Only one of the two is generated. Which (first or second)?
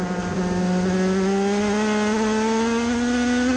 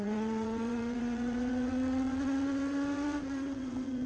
second